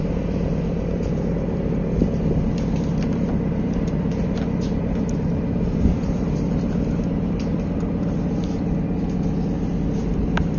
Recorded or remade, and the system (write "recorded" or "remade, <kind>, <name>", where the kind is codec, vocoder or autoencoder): recorded